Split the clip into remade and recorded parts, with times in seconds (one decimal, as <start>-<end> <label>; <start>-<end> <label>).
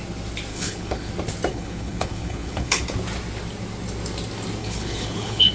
0.0-0.5 recorded; 0.5-1.1 remade; 1.1-1.5 recorded; 1.5-2.8 remade; 2.8-4.6 recorded; 4.6-5.5 remade